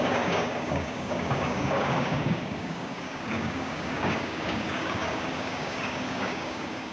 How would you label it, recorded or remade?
remade